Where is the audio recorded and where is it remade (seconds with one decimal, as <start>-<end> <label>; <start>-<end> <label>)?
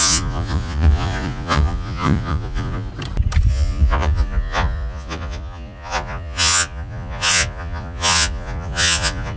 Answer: 0.0-2.9 remade; 2.9-3.5 recorded; 3.5-9.4 remade